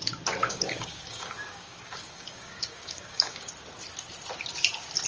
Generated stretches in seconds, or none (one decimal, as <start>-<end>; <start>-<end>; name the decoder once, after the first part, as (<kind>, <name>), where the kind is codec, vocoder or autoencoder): 0.4-3.5 (codec, DAC)